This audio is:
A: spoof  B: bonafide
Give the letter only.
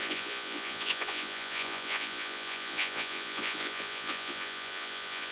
A